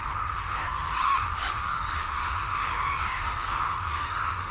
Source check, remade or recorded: remade